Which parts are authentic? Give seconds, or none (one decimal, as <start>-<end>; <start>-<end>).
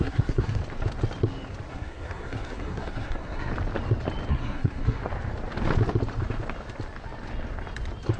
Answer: 0.6-1.7; 3.5-4.3; 5.0-8.2